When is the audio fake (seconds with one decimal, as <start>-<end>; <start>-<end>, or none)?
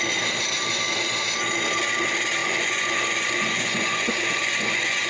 2.4-5.1